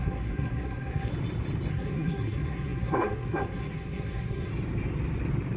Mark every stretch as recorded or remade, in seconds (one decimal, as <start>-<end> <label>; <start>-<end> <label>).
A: 0.0-1.1 remade; 1.1-1.7 recorded; 1.7-4.5 remade; 4.5-5.6 recorded